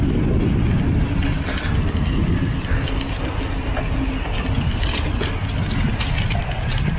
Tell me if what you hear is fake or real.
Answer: real